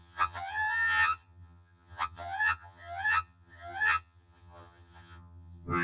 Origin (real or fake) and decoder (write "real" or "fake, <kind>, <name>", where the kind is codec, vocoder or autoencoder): fake, vocoder, HiFi-GAN